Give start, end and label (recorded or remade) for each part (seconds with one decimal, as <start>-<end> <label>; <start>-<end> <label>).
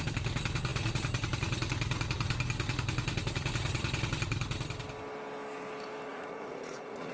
0.0-6.1 recorded; 6.1-7.1 remade